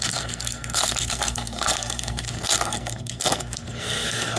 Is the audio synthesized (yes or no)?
yes